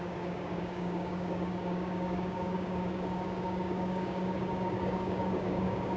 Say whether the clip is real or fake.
fake